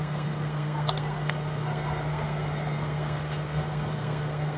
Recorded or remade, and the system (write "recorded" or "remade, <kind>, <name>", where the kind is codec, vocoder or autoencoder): remade, codec, SNAC